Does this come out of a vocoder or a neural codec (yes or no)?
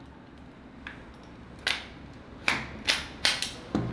no